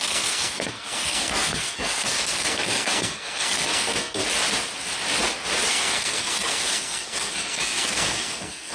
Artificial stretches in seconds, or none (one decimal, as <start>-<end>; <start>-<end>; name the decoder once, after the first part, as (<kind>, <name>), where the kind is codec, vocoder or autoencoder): 0.0-4.2 (codec, SNAC); 5.7-8.7